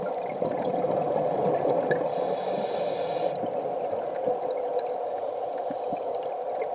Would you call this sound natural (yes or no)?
yes